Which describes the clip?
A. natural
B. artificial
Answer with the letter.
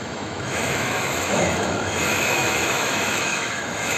B